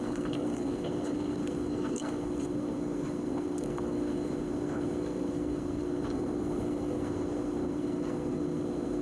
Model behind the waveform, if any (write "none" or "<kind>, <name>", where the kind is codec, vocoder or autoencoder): codec, SNAC